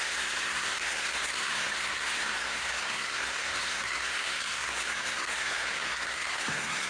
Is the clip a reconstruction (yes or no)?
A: yes